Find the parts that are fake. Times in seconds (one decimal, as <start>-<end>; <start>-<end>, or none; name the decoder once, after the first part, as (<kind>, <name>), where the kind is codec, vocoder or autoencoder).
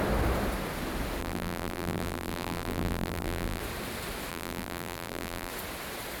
1.2-3.6 (vocoder, BigVGAN v2); 4.3-5.5